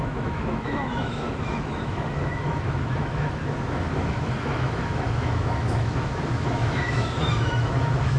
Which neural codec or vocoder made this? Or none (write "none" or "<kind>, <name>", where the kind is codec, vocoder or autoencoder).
autoencoder, DAC-VAE